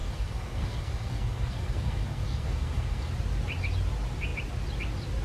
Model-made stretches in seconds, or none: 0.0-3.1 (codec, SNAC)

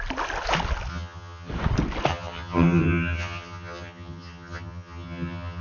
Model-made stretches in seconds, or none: 0.9-1.5 (vocoder, HiFi-GAN); 2.1-5.6

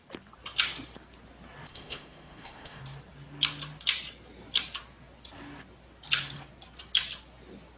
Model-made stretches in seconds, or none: 1.7-2.8 (autoencoder, DAC-VAE)

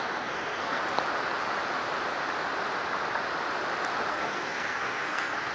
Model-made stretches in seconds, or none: 0.0-0.8 (codec, SNAC); 4.1-5.5